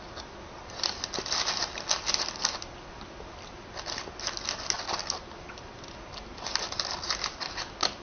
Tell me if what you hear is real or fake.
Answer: real